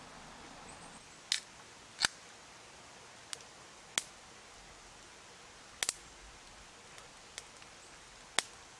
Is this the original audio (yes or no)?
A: yes